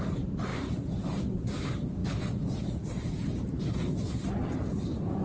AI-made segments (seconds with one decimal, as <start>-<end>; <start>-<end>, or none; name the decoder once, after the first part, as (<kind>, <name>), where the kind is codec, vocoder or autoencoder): 0.0-2.0 (vocoder, BigVGAN v2)